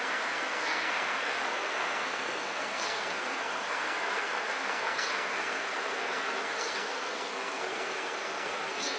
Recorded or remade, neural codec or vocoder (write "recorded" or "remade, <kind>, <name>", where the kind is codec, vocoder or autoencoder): remade, codec, SNAC